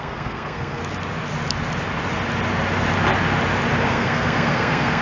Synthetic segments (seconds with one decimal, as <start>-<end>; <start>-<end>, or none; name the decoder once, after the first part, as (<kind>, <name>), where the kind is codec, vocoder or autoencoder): 0.0-0.8 (codec, SNAC); 3.8-5.0